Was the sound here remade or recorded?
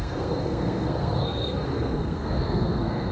remade